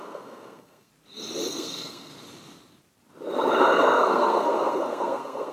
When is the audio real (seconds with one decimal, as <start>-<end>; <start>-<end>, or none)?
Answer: 0.9-1.5; 2.1-3.6